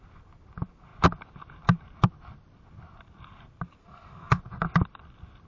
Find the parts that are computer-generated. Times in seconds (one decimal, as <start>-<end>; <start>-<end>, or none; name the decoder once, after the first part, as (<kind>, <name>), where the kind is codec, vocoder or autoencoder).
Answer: 3.8-4.4 (codec, SNAC)